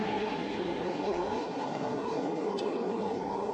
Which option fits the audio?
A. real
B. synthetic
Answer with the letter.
B